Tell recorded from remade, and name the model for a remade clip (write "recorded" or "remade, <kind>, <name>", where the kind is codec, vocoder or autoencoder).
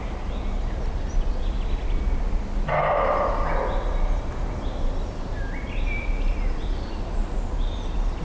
recorded